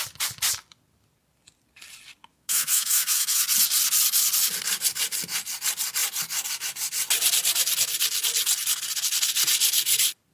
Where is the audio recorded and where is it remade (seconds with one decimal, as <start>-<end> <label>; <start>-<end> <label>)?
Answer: 0.0-2.3 recorded; 2.3-3.4 remade; 3.4-10.3 recorded